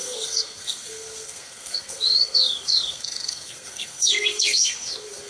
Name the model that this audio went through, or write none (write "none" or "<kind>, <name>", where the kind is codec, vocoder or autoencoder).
codec, SNAC